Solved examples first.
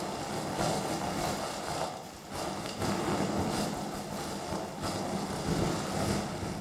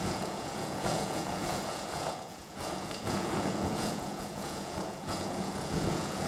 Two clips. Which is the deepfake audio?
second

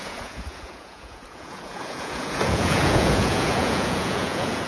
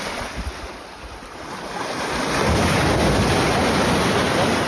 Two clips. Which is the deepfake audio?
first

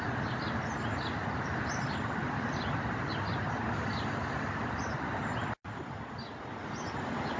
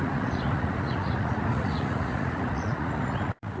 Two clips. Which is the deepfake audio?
second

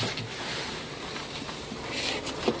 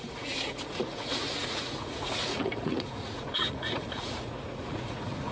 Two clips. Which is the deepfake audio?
second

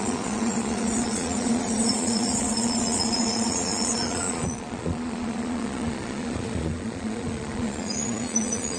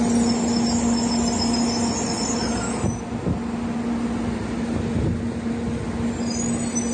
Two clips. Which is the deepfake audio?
first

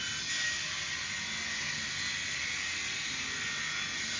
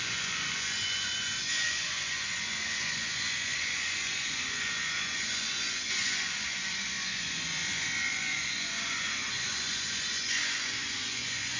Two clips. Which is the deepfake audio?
second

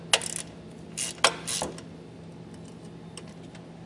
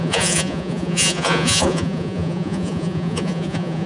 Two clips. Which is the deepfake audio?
second